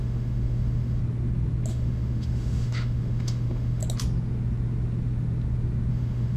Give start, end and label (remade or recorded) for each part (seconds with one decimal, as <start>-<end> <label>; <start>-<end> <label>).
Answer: 0.0-1.0 remade; 1.0-1.7 recorded; 1.7-3.8 remade; 3.8-5.9 recorded; 5.9-6.4 remade